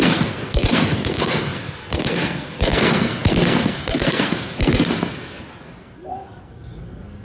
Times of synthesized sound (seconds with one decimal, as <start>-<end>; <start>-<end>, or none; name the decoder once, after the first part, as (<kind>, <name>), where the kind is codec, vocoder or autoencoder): 0.0-7.2 (codec, SNAC)